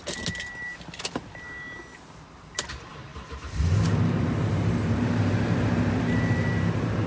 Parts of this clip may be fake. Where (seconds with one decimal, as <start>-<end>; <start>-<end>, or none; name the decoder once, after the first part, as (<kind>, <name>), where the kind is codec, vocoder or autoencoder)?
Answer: 3.1-7.1 (vocoder, BigVGAN v2)